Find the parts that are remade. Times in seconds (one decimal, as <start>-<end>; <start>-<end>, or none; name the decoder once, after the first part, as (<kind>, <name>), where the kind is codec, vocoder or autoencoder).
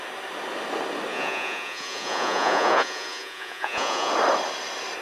1.1-4.1 (vocoder, Vocos)